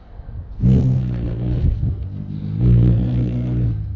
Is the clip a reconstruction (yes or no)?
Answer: yes